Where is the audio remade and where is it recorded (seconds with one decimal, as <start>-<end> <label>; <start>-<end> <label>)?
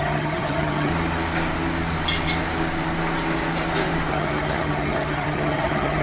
0.0-0.9 remade; 0.9-4.1 recorded; 4.1-6.0 remade